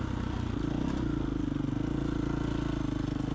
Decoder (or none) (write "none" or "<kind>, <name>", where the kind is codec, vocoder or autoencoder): none